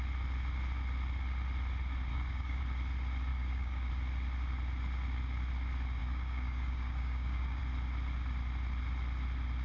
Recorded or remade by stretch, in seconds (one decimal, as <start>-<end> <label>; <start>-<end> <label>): 0.0-2.1 recorded; 2.1-2.6 remade; 2.6-3.3 recorded; 3.3-3.9 remade; 3.9-6.0 recorded; 6.0-7.6 remade; 7.6-9.6 recorded

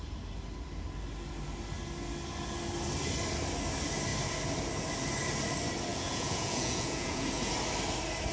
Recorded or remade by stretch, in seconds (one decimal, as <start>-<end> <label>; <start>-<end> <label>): 0.0-5.9 recorded; 5.9-7.5 remade; 7.5-8.3 recorded

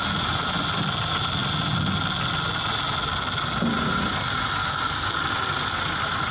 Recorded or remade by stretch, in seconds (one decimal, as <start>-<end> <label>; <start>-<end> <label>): 0.0-4.6 recorded; 4.6-5.2 remade; 5.2-6.3 recorded

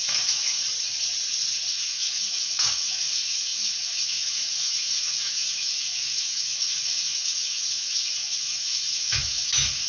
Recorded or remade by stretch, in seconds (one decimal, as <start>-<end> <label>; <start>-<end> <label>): 0.0-0.6 remade; 0.6-1.7 recorded; 1.7-9.9 remade

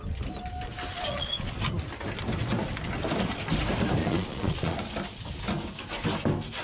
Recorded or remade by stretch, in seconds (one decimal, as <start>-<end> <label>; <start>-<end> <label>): 0.0-0.9 recorded; 0.9-1.5 remade; 1.5-4.0 recorded; 4.0-4.8 remade; 4.8-6.6 recorded

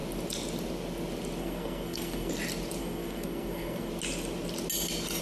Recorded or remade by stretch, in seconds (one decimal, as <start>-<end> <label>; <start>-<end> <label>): 0.0-1.4 recorded; 1.4-2.3 remade; 2.3-2.8 recorded; 2.8-3.9 remade; 3.9-5.2 recorded

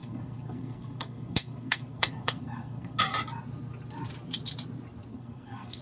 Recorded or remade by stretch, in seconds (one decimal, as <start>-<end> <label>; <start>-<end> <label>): 0.0-3.0 remade; 3.0-5.1 recorded; 5.1-5.8 remade